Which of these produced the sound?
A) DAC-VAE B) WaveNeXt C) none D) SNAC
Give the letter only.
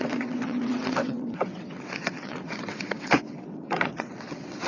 B